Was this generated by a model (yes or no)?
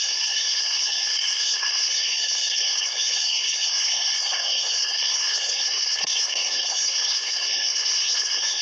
yes